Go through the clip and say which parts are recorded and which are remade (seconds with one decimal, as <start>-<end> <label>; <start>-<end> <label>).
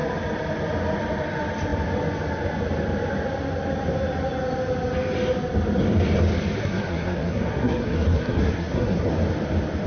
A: 0.0-6.6 recorded; 6.6-9.1 remade; 9.1-9.9 recorded